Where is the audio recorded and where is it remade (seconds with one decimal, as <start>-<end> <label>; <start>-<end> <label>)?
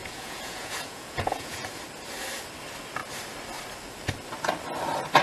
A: 0.0-1.8 remade; 1.8-5.2 recorded